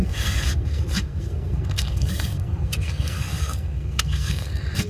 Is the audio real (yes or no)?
no